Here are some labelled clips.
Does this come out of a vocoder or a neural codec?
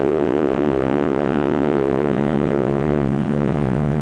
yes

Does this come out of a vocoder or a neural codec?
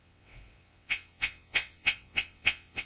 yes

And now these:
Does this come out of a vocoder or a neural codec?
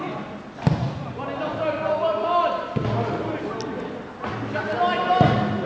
no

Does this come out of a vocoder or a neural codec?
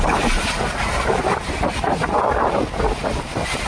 no